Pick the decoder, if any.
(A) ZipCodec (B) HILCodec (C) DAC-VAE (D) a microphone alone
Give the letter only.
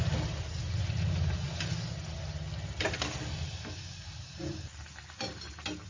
D